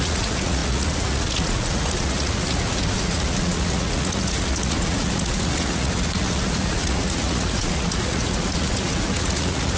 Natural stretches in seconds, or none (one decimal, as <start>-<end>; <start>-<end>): none